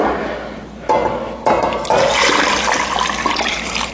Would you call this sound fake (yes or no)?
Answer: no